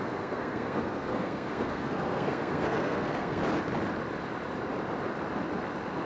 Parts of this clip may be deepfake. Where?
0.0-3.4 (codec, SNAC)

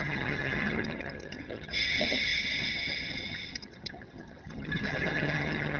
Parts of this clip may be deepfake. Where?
0.0-5.8 (vocoder, HiFi-GAN)

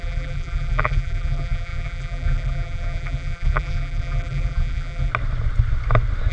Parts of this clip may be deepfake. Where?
0.0-5.1 (vocoder, BigVGAN v2)